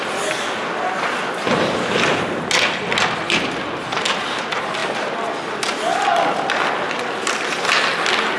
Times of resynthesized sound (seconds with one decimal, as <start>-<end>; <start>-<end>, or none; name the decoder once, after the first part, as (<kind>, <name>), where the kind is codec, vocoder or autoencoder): none

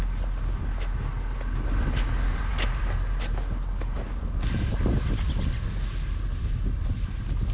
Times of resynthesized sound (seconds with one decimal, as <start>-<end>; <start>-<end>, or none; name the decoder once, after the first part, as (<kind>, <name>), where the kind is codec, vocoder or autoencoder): none

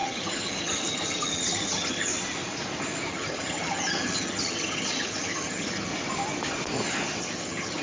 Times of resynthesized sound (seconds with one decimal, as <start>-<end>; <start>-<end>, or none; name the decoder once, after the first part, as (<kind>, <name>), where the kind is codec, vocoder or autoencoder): 0.0-2.1 (vocoder, HiFi-GAN); 3.1-5.9; 7.2-7.8

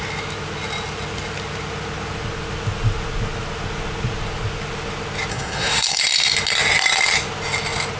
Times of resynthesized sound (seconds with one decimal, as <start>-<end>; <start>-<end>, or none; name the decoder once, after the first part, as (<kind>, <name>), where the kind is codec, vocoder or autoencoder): 5.3-6.0 (codec, SNAC)

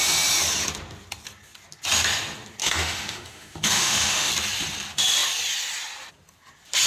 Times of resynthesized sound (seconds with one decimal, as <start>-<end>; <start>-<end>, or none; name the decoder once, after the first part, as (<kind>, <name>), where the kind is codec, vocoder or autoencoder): 2.6-4.3 (autoencoder, DAC-VAE)

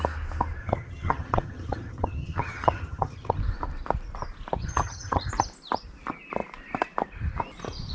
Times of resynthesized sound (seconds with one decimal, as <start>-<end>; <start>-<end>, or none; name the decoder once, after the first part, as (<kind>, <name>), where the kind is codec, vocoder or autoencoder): 0.6-3.4 (vocoder, HiFi-GAN); 4.6-5.3